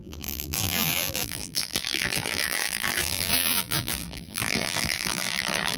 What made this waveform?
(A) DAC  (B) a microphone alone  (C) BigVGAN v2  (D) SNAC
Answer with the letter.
C